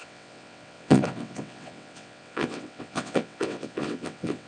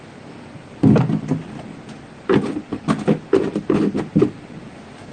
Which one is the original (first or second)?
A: second